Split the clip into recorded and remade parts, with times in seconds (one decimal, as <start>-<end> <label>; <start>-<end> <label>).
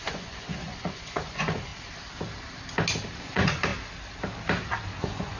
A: 0.0-1.7 remade; 1.7-3.2 recorded; 3.2-3.7 remade; 3.7-5.0 recorded; 5.0-5.4 remade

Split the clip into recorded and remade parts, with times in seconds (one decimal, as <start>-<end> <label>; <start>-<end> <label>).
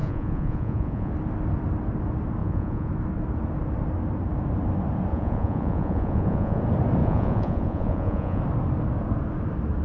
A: 0.0-1.1 remade; 1.1-2.4 recorded; 2.4-2.9 remade; 2.9-5.1 recorded; 5.1-6.6 remade; 6.6-7.0 recorded; 7.0-8.4 remade; 8.4-9.8 recorded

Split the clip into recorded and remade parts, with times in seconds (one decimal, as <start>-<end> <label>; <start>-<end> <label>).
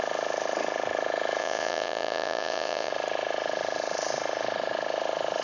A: 0.0-1.4 recorded; 1.4-2.9 remade; 2.9-5.4 recorded